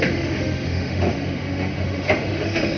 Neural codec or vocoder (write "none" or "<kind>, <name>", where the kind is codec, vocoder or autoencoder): autoencoder, DAC-VAE